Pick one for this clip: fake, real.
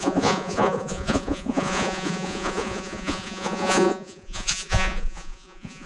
fake